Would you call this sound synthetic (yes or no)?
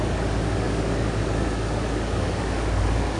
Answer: yes